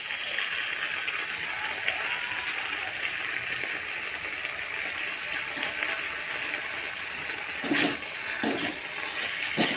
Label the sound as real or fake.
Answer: real